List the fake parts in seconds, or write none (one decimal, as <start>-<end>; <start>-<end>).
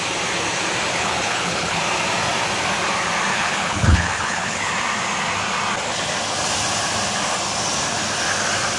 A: 0.9-1.8; 3.3-4.7